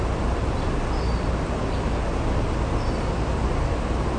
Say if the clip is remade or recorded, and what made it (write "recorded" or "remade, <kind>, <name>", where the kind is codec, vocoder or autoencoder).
recorded